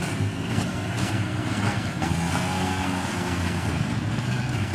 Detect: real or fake fake